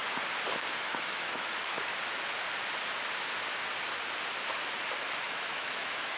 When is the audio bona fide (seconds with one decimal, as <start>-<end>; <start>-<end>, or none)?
0.0-0.6; 1.9-5.1